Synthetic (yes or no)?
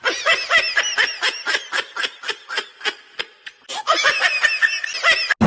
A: no